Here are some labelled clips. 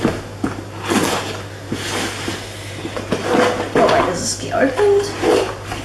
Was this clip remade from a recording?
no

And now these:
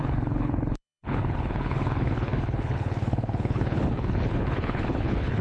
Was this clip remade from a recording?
yes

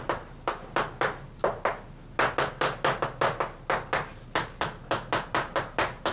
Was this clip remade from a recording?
no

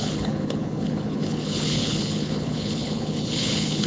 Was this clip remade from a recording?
yes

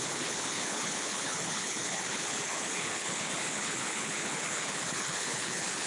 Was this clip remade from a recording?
yes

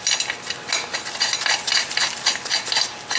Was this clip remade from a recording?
no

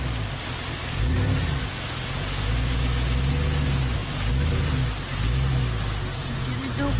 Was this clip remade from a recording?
no